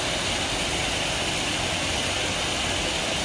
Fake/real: real